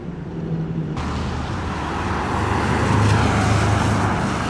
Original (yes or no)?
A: yes